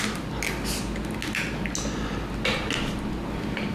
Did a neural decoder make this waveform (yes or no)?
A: no